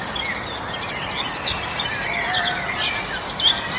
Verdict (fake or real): real